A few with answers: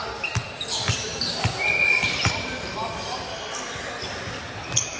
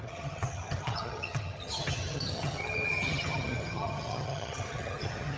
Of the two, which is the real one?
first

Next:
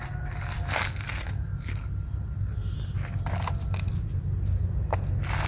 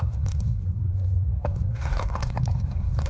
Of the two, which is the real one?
first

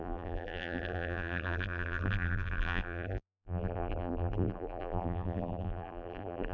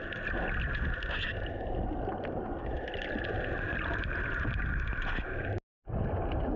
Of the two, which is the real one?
second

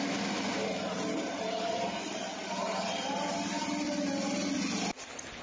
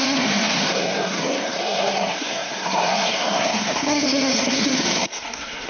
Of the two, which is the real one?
first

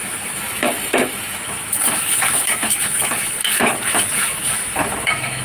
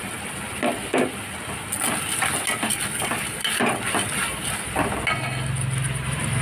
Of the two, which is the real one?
second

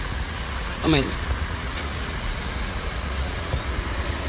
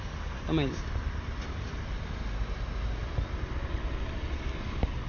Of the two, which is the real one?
second